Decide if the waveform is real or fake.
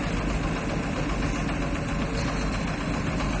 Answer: real